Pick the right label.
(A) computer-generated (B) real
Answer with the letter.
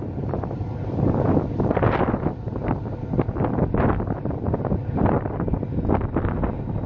B